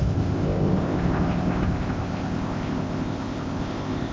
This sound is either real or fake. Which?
fake